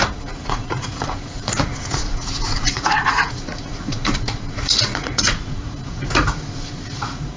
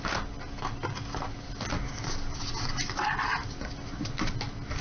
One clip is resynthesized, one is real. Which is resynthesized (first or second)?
first